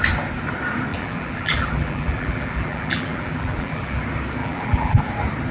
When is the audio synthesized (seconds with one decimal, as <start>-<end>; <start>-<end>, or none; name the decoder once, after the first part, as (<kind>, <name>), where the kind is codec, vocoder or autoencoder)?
0.9-4.0 (vocoder, BigVGAN v2); 4.4-5.0